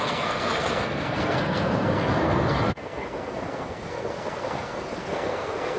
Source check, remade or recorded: remade